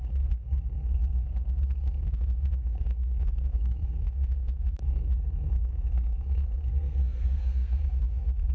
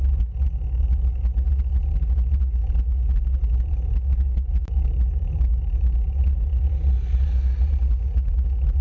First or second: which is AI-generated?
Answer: first